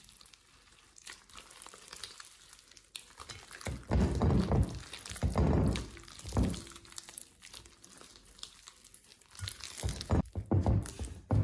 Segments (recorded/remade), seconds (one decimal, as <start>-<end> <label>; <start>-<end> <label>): 0.0-11.4 recorded